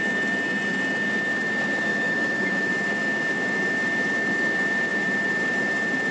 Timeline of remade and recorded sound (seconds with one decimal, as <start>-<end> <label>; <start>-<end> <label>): 0.0-1.9 recorded; 1.9-2.7 remade; 2.7-6.1 recorded